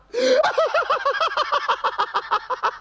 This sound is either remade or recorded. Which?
recorded